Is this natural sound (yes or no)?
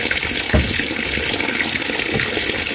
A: yes